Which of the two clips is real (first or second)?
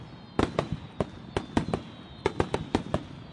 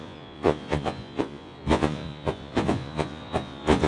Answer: first